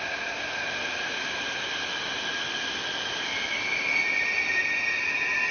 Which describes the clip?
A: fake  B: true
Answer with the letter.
B